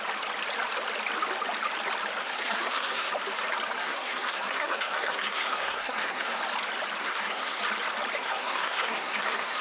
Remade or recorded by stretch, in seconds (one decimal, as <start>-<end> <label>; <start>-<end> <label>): 0.0-2.2 recorded; 2.2-3.1 remade; 3.1-3.8 recorded; 3.8-6.4 remade; 6.4-7.0 recorded; 7.0-7.6 remade; 7.6-8.2 recorded; 8.2-9.6 remade